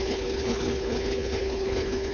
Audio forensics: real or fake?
fake